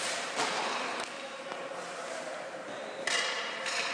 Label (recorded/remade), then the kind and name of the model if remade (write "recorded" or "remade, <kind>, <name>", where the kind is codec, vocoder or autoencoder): remade, vocoder, BigVGAN v2